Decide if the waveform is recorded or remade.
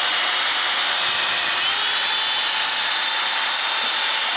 recorded